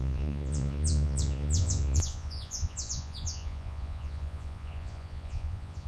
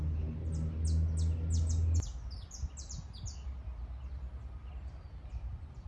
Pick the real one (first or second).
second